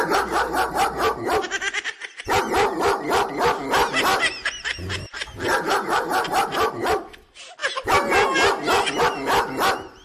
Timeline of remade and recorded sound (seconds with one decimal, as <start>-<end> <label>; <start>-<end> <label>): 0.0-10.0 recorded